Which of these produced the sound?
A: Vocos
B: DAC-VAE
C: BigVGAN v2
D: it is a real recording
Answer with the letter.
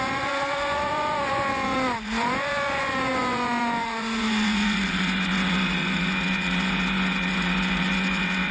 A